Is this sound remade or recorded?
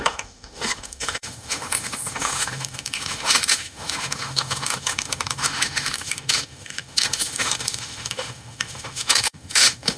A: remade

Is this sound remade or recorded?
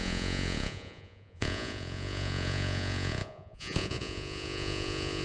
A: remade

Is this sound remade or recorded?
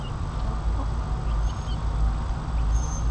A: recorded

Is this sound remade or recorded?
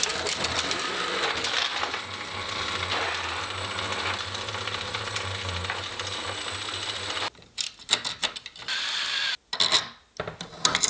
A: recorded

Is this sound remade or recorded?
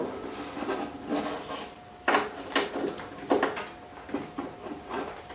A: recorded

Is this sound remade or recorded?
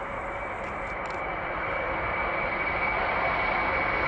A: recorded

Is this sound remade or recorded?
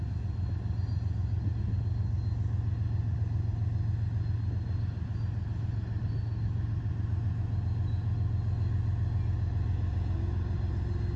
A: recorded